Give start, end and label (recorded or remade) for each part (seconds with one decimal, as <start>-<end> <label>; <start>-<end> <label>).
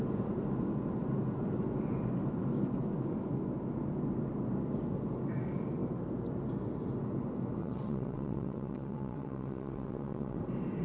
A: 0.0-7.6 recorded; 7.6-10.4 remade; 10.4-10.8 recorded